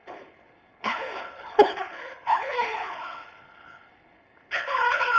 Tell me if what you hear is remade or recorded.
remade